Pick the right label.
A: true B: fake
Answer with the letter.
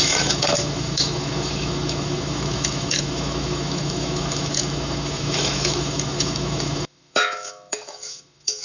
B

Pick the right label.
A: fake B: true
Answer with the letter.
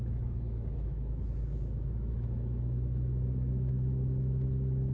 A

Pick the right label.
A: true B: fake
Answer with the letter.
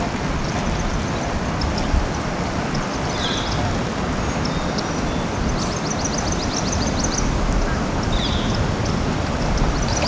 A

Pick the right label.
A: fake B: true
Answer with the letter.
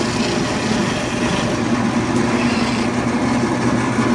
B